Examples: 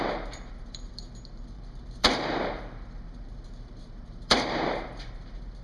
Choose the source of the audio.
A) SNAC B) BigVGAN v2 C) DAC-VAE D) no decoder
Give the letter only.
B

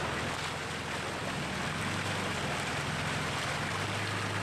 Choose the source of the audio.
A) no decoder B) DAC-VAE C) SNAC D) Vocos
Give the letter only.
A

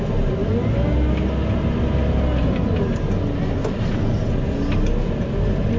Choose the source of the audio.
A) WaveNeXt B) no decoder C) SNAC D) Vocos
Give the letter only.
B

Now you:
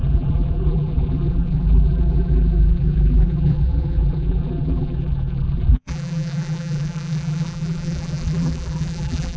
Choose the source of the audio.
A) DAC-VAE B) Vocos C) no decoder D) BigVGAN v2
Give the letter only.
D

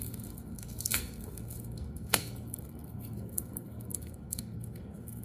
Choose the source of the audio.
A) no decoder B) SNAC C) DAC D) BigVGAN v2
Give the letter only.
B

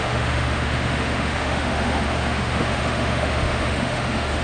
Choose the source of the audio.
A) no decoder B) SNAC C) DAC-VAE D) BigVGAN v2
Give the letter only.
C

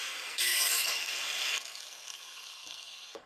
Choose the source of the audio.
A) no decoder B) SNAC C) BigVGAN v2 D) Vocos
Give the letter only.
B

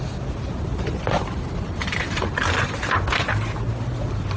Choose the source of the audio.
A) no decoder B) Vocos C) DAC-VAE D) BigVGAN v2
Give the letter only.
A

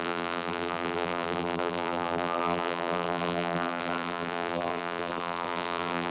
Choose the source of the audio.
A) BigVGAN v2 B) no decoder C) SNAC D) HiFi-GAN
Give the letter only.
A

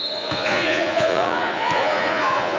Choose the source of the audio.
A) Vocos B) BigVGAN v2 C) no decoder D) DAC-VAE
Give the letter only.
A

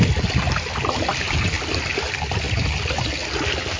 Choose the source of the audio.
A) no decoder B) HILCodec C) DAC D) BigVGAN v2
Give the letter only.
A